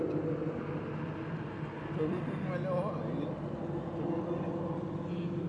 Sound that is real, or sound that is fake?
real